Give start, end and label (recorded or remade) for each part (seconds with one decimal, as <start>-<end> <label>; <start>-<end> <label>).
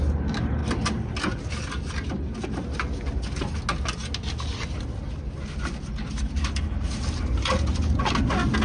0.0-8.6 recorded